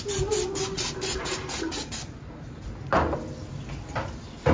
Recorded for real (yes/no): yes